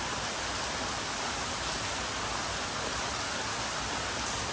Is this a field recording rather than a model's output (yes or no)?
yes